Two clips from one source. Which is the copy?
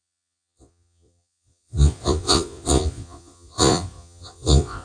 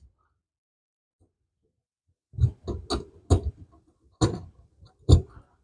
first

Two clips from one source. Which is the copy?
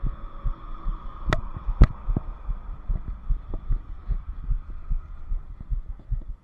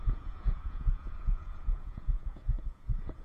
second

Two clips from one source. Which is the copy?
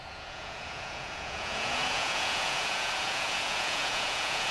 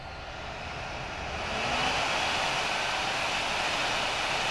first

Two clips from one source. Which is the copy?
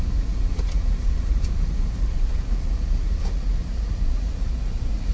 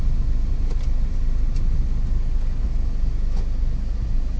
first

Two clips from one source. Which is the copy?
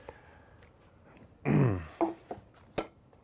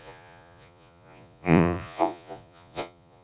second